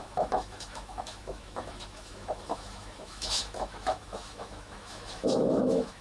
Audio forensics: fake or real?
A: fake